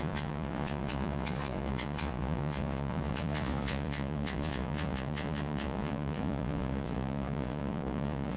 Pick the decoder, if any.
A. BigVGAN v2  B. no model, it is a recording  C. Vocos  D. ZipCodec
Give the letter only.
C